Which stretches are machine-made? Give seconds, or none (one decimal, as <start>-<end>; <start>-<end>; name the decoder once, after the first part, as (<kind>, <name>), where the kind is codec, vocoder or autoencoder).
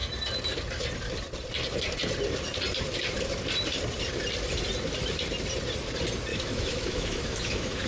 6.3-7.9 (autoencoder, DAC-VAE)